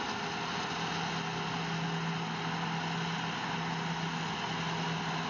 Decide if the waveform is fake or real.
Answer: real